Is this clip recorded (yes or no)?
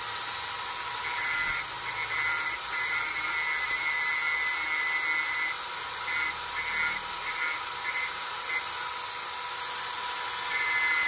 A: yes